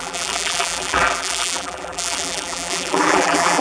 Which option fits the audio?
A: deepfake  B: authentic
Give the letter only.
A